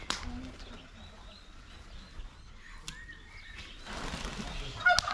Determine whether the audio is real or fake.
real